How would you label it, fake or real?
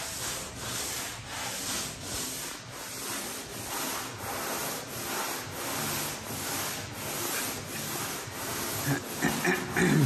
real